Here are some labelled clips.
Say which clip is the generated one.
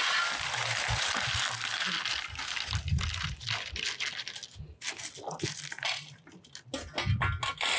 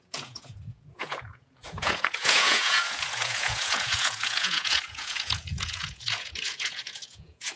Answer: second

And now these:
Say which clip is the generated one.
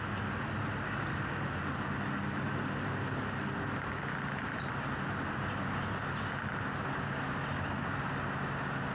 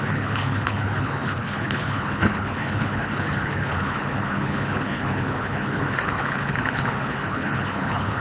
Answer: second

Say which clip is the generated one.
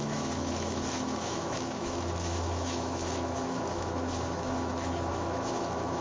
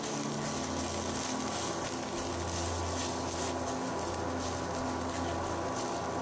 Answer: first